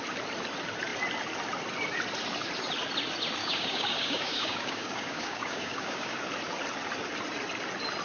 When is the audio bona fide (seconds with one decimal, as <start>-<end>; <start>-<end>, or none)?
0.0-3.4; 6.2-8.0